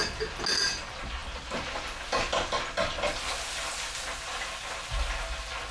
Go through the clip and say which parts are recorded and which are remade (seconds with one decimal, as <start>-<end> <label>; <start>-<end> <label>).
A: 0.0-5.7 recorded